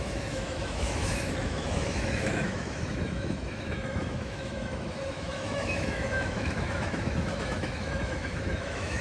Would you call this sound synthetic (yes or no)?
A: yes